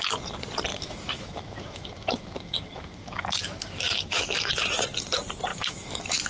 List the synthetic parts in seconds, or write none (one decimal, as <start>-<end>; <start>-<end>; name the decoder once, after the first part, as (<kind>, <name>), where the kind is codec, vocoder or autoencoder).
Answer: 0.7-4.5 (autoencoder, DAC-VAE); 5.5-6.3